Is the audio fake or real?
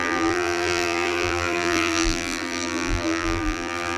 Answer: fake